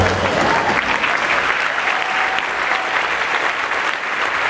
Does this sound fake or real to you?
real